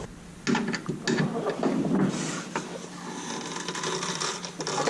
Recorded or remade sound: recorded